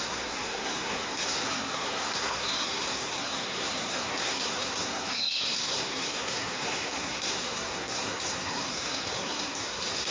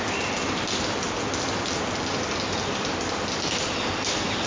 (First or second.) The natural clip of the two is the second